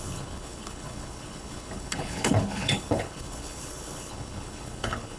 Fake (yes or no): yes